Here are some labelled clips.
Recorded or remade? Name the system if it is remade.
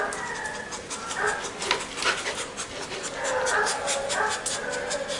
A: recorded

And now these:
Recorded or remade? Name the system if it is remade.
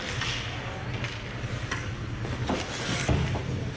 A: recorded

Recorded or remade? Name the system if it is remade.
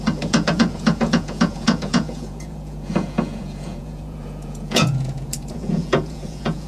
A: remade, vocoder, Vocos